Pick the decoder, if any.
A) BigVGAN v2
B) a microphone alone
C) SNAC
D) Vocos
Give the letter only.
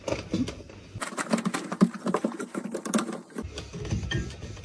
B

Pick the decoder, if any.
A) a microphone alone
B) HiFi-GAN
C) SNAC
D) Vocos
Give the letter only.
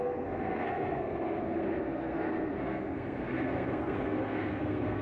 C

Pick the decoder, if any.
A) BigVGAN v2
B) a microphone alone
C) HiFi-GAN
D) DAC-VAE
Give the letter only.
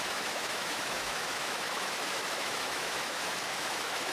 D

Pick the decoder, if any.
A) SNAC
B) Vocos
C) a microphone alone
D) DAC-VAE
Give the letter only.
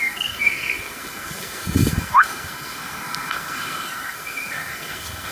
A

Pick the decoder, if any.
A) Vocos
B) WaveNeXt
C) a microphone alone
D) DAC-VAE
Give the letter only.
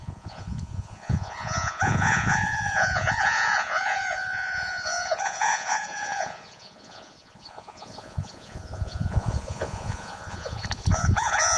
A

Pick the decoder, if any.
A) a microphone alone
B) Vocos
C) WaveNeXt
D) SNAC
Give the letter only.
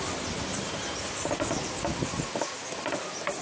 A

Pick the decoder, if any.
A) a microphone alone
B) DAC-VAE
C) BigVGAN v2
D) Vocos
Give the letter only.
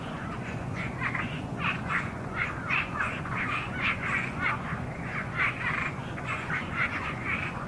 D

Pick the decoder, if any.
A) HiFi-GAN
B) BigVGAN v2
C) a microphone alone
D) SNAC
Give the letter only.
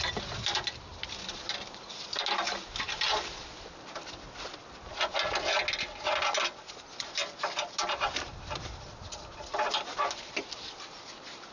C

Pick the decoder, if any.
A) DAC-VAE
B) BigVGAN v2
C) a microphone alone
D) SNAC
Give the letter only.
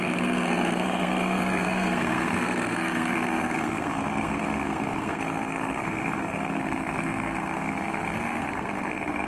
D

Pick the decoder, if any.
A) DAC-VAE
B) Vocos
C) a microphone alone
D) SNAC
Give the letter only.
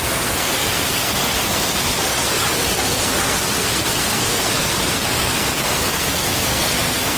D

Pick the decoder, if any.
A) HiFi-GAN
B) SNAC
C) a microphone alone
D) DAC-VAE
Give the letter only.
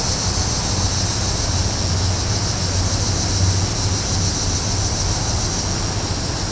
C